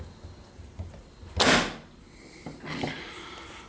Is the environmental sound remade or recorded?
recorded